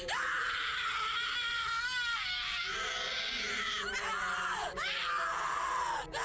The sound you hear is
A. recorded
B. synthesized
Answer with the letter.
A